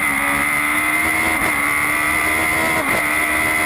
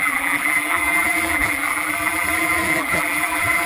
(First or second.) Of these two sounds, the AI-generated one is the second